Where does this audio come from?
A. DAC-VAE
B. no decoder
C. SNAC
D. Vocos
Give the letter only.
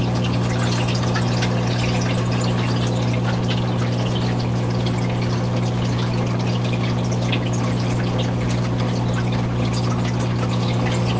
B